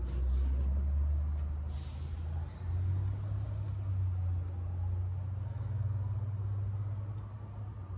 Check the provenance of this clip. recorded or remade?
recorded